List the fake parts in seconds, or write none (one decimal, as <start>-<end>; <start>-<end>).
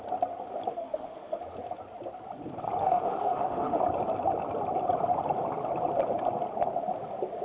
0.7-1.4; 2.8-3.8